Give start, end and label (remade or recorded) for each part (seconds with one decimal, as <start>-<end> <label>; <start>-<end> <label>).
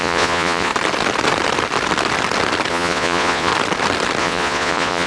0.0-0.7 remade; 0.7-2.7 recorded; 2.7-3.5 remade; 3.5-4.2 recorded; 4.2-5.1 remade